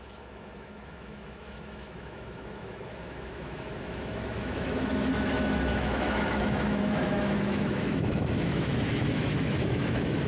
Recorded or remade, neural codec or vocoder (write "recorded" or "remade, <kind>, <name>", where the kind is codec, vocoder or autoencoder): remade, autoencoder, DAC-VAE